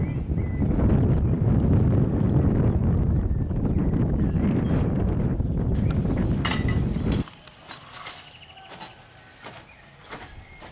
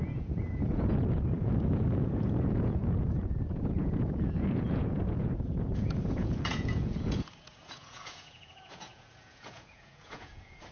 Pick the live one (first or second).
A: first